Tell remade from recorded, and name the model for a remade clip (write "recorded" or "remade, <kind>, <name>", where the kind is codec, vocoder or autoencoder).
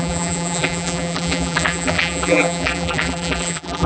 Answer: remade, vocoder, BigVGAN v2